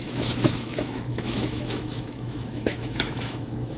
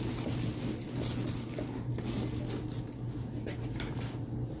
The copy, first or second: first